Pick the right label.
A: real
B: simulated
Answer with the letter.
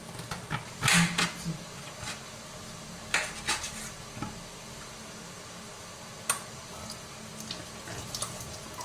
A